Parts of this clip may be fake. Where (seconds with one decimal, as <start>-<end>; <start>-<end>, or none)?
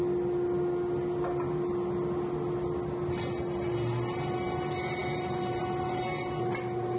none